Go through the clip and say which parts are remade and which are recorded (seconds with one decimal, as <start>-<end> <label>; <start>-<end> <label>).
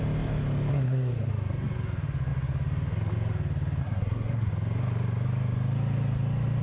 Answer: 0.0-0.7 recorded; 0.7-1.3 remade; 1.3-3.8 recorded; 3.8-4.5 remade; 4.5-6.6 recorded